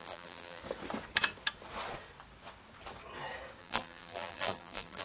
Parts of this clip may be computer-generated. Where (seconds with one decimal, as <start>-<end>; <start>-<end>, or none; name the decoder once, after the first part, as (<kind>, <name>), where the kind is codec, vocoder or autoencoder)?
0.0-0.6 (vocoder, BigVGAN v2); 3.6-5.0